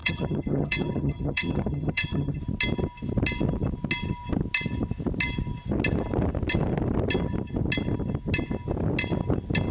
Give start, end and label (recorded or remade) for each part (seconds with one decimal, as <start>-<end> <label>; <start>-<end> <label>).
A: 0.0-2.4 remade; 2.4-9.7 recorded